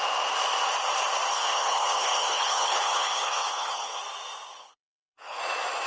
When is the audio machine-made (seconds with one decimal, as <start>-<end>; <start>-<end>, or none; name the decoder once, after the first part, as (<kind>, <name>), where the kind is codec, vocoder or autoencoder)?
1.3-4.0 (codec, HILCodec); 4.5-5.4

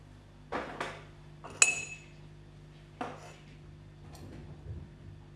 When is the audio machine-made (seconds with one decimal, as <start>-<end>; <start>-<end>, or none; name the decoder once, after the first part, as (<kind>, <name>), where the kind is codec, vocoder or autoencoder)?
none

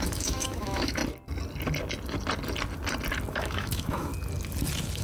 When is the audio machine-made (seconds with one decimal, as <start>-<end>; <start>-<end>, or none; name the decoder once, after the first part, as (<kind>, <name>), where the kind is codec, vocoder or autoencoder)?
0.0-1.0 (autoencoder, DAC-VAE); 3.3-4.1